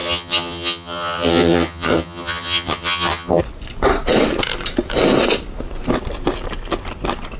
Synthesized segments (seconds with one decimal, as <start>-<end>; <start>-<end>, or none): 0.0-3.4